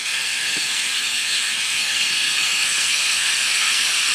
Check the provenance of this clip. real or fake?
fake